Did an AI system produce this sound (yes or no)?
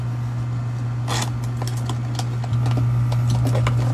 no